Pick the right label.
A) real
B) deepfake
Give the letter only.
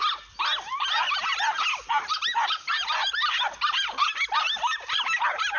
A